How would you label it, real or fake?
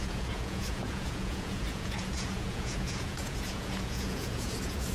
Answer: fake